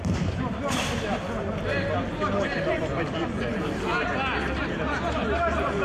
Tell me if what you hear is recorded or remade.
recorded